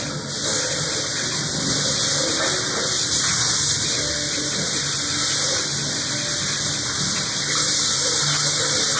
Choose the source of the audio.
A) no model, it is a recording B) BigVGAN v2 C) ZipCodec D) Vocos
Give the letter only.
A